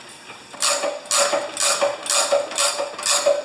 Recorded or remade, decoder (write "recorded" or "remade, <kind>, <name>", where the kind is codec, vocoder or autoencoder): recorded